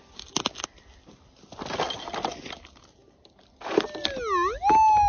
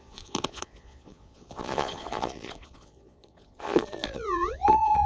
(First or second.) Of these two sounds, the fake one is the second